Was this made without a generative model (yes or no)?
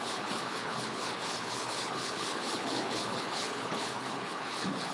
no